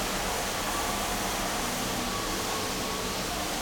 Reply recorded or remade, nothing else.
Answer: recorded